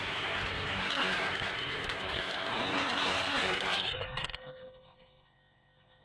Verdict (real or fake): fake